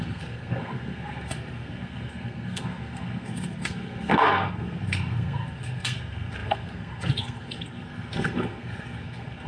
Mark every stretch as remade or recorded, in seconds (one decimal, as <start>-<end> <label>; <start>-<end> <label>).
0.0-9.5 remade